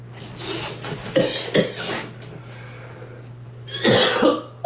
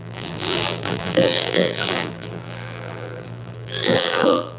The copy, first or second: second